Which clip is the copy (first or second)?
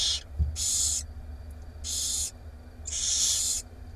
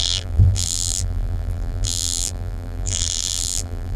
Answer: second